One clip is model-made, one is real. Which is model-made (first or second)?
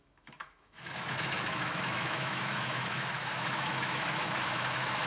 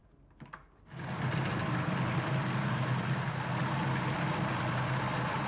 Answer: first